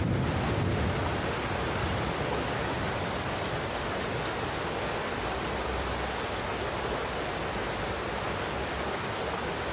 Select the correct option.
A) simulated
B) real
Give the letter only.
B